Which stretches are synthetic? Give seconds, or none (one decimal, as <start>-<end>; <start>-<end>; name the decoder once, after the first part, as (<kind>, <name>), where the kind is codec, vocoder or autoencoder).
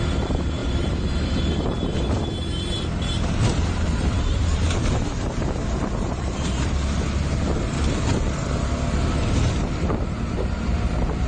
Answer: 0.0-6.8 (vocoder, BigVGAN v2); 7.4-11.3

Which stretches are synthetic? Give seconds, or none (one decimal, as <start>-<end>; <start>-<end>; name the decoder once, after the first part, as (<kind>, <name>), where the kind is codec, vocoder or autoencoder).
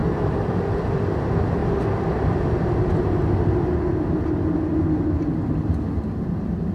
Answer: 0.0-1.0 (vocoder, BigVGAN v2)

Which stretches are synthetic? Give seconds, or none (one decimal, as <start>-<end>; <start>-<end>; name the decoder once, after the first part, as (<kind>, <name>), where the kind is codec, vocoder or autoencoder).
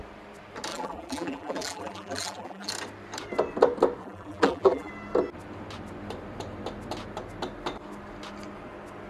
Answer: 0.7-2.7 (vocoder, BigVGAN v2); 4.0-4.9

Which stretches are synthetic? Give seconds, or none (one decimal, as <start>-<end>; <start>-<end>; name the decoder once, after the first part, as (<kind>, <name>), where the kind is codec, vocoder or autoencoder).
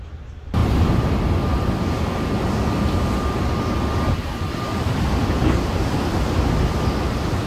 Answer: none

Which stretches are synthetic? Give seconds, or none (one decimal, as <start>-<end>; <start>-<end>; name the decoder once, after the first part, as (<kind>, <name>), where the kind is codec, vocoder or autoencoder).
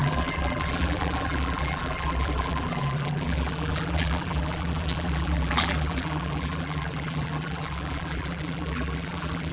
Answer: 0.0-9.5 (vocoder, BigVGAN v2)